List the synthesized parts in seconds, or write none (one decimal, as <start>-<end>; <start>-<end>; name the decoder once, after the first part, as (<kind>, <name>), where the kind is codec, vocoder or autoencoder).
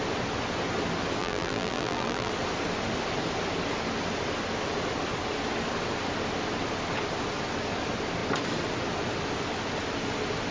1.2-2.3 (vocoder, BigVGAN v2)